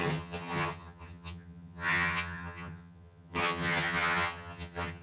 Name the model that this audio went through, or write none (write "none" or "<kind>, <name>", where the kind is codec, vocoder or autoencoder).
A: vocoder, HiFi-GAN